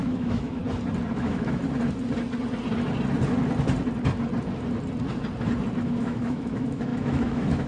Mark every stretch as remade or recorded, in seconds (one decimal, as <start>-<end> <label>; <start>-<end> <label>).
0.0-0.6 remade; 0.6-1.2 recorded; 1.2-1.6 remade; 1.6-5.8 recorded; 5.8-7.7 remade